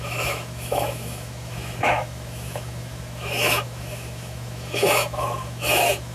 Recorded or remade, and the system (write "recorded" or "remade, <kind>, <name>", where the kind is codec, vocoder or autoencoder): remade, autoencoder, DAC-VAE